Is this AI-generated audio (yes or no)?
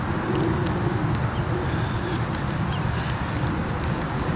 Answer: no